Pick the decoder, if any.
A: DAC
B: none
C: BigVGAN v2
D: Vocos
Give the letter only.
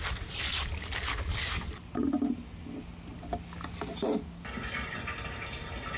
B